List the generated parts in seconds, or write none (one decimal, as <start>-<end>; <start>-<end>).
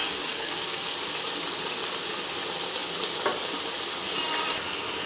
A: 0.0-0.9